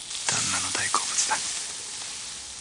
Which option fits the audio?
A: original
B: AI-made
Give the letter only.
A